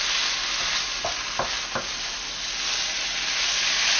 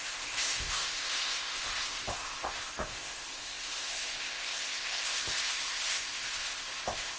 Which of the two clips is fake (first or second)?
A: second